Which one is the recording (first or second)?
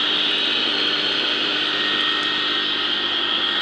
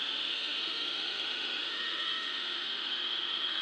first